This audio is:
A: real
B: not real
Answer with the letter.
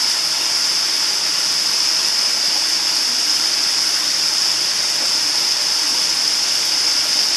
A